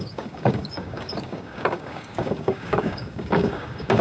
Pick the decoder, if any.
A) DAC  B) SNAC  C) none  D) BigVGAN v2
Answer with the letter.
A